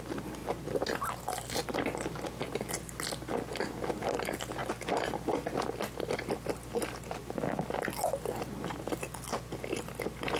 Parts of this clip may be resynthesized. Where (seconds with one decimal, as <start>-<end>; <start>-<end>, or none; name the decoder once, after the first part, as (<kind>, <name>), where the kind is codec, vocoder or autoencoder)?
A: none

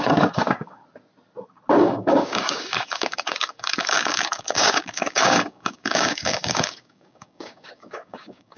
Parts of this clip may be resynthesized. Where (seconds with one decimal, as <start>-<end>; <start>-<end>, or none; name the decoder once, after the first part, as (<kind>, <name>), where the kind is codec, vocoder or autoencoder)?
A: 0.0-0.8 (codec, DAC); 1.8-8.6